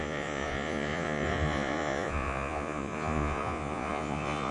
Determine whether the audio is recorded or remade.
remade